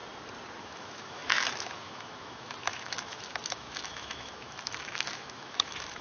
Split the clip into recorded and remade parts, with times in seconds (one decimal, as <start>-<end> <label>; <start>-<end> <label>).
0.0-0.6 recorded; 0.6-6.0 remade